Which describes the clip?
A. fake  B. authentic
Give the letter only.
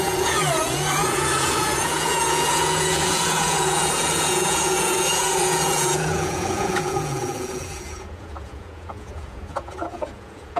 A